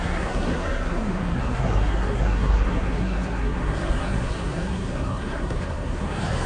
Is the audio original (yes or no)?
no